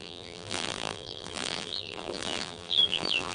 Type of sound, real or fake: fake